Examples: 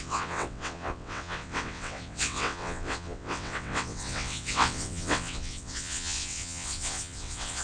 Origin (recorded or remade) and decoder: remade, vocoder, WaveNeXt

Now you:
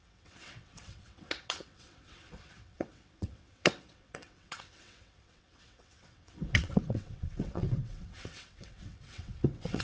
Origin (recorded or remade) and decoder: remade, vocoder, WaveNeXt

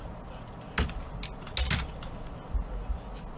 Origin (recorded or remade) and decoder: recorded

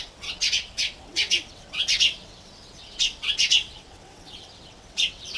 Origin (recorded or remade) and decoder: remade, vocoder, WaveNeXt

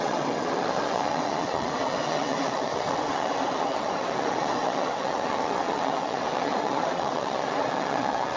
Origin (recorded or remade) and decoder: remade, vocoder, WaveNeXt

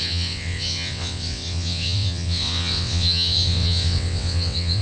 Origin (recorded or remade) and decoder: remade, vocoder, WaveNeXt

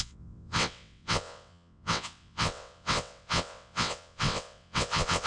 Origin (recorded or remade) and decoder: remade, vocoder, WaveNeXt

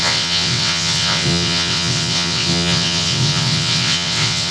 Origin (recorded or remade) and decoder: remade, vocoder, WaveNeXt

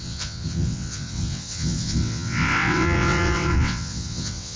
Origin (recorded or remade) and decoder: remade, vocoder, WaveNeXt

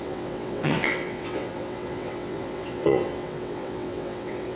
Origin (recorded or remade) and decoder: remade, vocoder, WaveNeXt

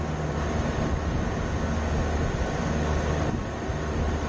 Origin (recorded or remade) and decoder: recorded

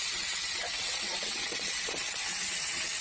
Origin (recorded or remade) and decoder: remade, vocoder, WaveNeXt